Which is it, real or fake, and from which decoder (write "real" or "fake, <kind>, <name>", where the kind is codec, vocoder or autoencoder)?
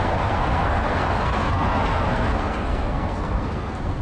fake, codec, SNAC